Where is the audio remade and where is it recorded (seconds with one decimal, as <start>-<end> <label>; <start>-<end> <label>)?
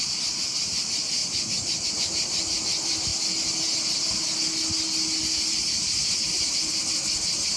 0.0-3.1 remade; 3.1-5.2 recorded; 5.2-7.6 remade